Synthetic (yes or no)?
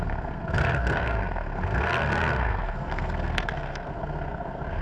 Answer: yes